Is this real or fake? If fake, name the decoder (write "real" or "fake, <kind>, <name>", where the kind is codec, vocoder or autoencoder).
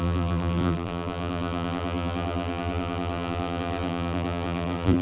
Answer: fake, vocoder, BigVGAN v2